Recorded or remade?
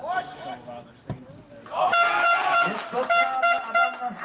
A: recorded